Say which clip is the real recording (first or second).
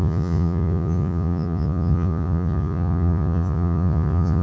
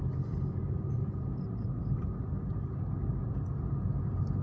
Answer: second